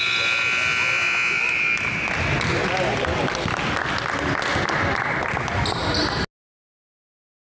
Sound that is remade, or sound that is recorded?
recorded